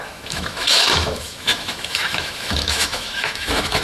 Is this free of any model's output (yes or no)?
no